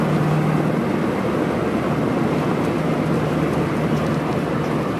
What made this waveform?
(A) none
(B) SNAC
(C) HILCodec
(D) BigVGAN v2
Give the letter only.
A